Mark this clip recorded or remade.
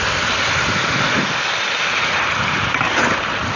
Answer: remade